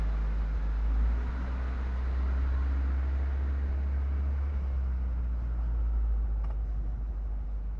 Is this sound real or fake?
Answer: real